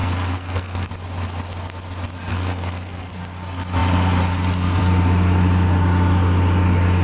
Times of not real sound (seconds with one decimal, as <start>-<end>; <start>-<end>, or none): 0.0-0.9; 2.3-3.1